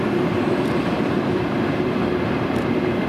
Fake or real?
fake